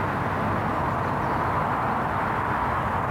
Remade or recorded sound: recorded